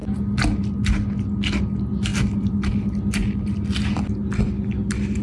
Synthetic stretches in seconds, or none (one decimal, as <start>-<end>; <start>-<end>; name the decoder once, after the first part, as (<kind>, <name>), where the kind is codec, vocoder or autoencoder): none